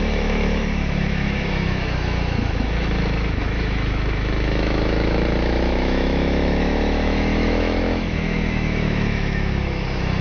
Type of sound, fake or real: fake